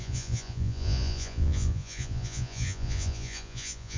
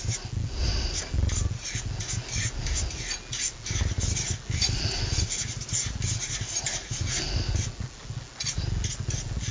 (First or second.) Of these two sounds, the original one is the second